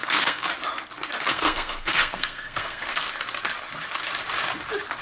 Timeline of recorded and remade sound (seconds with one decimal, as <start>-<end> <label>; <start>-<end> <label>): 0.0-0.5 remade; 0.5-1.3 recorded; 1.3-3.1 remade; 3.1-5.0 recorded